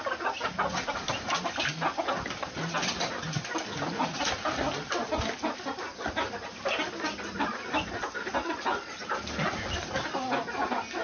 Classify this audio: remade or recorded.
recorded